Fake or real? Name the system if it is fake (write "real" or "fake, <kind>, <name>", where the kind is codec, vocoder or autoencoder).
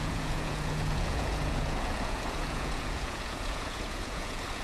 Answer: fake, vocoder, Vocos